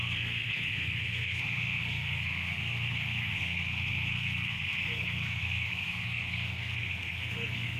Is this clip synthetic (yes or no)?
yes